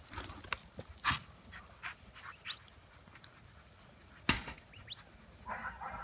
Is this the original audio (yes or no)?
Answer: yes